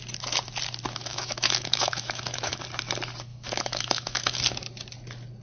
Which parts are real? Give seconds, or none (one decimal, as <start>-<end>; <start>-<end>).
0.0-1.0; 2.6-3.3; 4.4-5.4